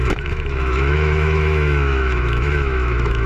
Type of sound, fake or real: fake